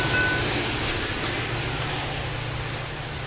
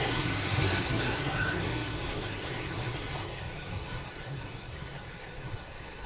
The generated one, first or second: second